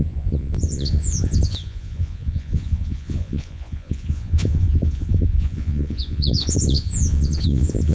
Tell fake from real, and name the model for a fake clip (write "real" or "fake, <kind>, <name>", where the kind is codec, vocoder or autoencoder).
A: fake, vocoder, Vocos